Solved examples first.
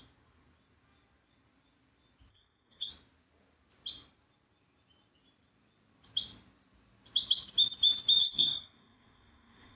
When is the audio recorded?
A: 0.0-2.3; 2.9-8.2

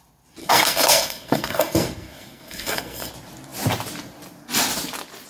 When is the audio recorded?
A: 0.0-0.4; 3.1-5.3

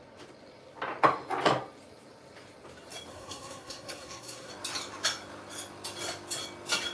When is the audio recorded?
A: 0.0-3.1; 4.5-6.9